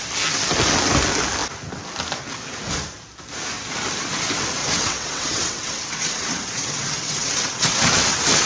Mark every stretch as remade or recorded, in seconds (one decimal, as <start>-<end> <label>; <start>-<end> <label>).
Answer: 0.0-4.6 recorded; 4.6-8.5 remade